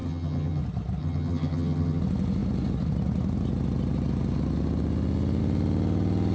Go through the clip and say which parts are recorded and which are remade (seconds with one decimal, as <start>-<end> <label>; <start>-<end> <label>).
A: 0.0-0.6 remade; 0.6-1.0 recorded; 1.0-2.0 remade; 2.0-6.3 recorded